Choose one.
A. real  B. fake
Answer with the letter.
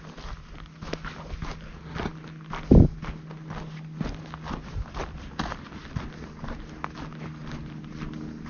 A